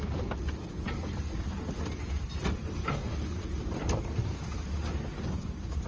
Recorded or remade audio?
recorded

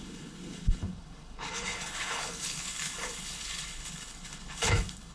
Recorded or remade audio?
remade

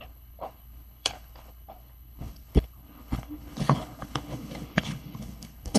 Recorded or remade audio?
remade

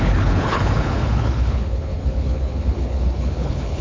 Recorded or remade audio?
remade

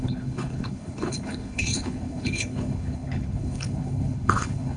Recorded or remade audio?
remade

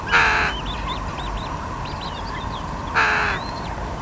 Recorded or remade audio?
recorded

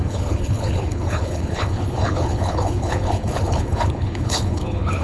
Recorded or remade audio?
remade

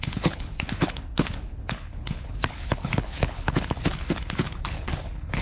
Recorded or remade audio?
remade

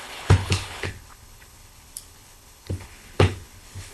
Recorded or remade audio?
remade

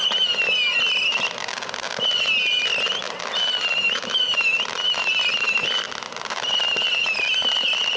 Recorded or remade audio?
recorded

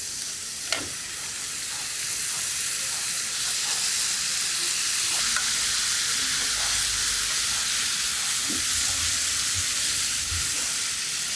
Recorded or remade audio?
recorded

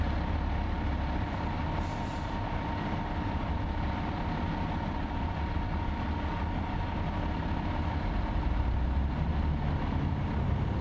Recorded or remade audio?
recorded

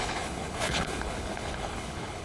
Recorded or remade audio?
remade